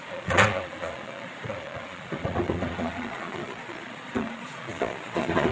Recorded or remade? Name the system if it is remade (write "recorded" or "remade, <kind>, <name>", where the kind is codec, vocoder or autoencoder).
remade, vocoder, Vocos